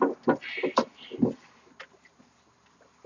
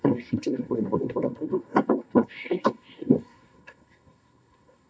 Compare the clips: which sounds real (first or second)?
first